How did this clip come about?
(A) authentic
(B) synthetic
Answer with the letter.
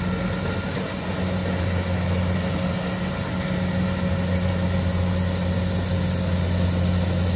A